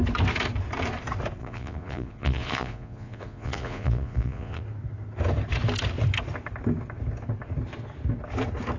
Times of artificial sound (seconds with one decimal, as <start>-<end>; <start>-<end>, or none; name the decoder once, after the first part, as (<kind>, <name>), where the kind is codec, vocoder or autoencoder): 1.4-4.6 (vocoder, Vocos)